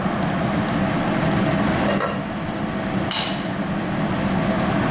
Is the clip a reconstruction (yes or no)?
no